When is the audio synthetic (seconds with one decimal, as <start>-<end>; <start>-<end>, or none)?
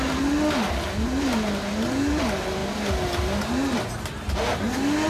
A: none